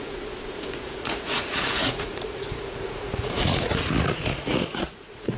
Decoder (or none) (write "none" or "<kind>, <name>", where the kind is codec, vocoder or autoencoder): vocoder, Vocos